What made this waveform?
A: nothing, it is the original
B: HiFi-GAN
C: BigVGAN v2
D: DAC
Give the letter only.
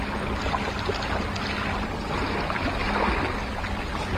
A